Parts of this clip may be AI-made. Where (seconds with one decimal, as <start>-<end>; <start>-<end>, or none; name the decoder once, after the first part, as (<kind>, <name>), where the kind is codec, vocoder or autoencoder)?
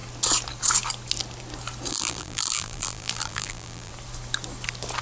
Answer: 1.9-3.9 (vocoder, BigVGAN v2)